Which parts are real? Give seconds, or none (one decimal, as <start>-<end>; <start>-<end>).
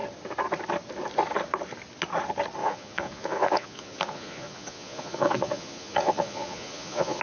0.0-2.6